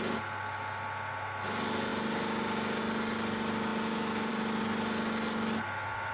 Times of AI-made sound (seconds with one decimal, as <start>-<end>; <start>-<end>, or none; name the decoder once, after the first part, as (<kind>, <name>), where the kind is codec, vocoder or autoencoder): none